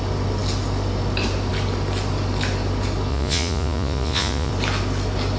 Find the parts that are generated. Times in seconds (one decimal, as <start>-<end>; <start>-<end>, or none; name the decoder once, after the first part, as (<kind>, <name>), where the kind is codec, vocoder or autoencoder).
3.1-4.5 (vocoder, Vocos)

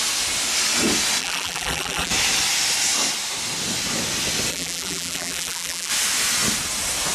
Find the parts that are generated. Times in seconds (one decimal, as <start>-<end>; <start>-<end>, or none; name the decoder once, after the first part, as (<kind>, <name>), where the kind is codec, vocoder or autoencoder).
1.2-2.1 (vocoder, BigVGAN v2); 4.5-5.9

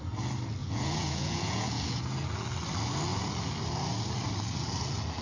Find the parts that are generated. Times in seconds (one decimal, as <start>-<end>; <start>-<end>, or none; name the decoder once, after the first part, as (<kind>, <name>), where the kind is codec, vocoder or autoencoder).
0.6-2.0 (vocoder, Vocos)